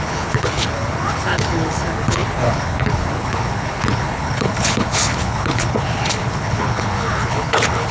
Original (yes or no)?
no